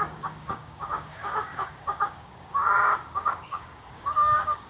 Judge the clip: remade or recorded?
remade